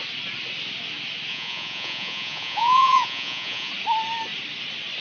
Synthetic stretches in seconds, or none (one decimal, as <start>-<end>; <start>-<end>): 1.3-3.7